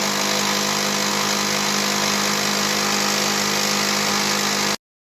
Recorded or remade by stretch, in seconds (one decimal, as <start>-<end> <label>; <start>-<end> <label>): 0.0-5.2 recorded